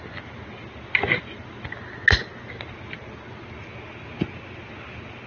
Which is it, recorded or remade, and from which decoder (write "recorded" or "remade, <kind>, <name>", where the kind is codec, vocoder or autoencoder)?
recorded